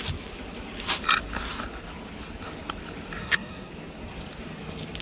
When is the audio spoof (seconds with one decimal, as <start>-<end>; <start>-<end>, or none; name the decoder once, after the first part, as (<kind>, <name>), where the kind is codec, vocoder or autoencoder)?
3.2-3.7 (codec, SNAC)